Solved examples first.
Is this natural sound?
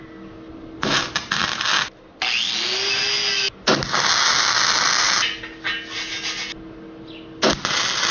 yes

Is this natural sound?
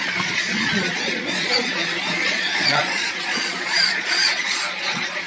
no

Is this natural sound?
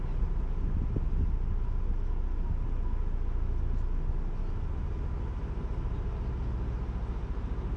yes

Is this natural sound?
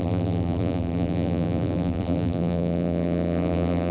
no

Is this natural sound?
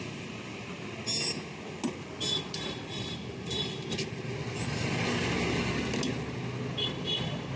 yes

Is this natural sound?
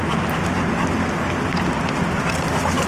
yes